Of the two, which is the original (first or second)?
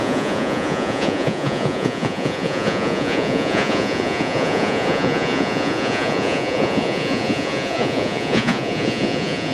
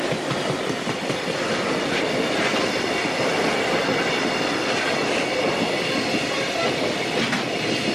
second